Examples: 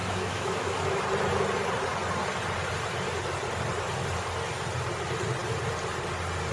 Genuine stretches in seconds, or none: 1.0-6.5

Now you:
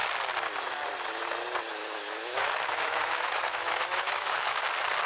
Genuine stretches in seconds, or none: 0.0-1.7; 4.6-5.1

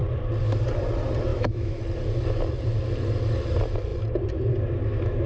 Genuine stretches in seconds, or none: 0.0-1.3; 1.8-5.3

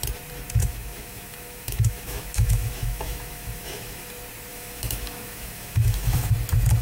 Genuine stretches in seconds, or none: 0.0-0.6; 4.1-4.5; 6.3-6.8

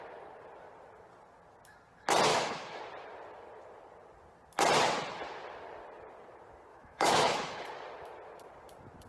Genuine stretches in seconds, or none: 0.0-2.3; 2.8-6.7; 7.6-9.1

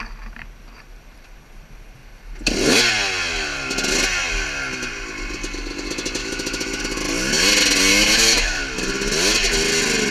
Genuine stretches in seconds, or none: 0.0-6.2; 6.8-7.9; 8.6-10.1

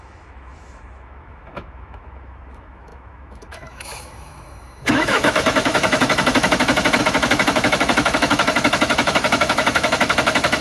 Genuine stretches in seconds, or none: none